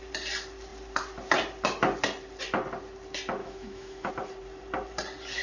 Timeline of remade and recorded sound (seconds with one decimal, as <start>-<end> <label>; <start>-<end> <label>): 0.0-3.4 recorded; 3.4-4.1 remade; 4.1-5.4 recorded